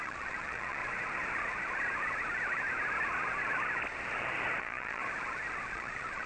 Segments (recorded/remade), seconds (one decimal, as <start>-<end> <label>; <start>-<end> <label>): 0.0-0.8 remade; 0.8-4.6 recorded; 4.6-5.0 remade; 5.0-5.7 recorded; 5.7-6.3 remade